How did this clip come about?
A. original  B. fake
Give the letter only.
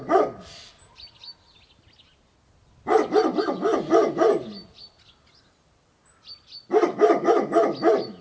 A